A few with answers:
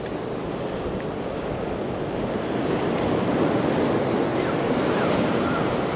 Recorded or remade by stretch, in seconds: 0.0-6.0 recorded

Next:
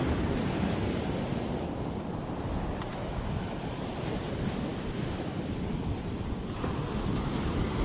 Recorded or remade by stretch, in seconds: 0.0-2.9 recorded; 2.9-3.5 remade; 3.5-4.7 recorded; 4.7-5.4 remade; 5.4-7.8 recorded

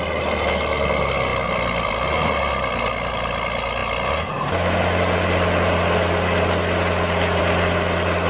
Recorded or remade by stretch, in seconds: 0.0-8.3 recorded

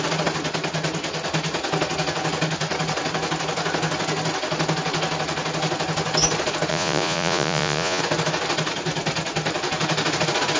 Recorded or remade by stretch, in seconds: 0.0-6.7 recorded; 6.7-8.0 remade; 8.0-10.6 recorded

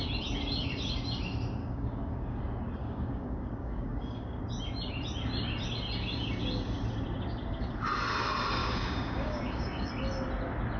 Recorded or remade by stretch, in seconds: 0.0-1.6 recorded; 1.6-2.4 remade; 2.4-2.8 recorded; 2.8-4.4 remade; 4.4-8.6 recorded; 8.6-9.9 remade; 9.9-10.8 recorded

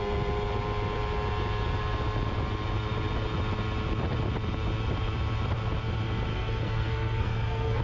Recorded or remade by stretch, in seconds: 0.0-6.3 recorded; 6.3-7.8 remade

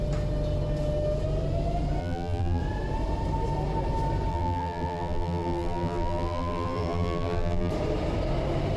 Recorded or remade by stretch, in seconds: 0.0-2.0 recorded; 2.0-2.6 remade; 2.6-4.3 recorded; 4.3-7.7 remade; 7.7-8.8 recorded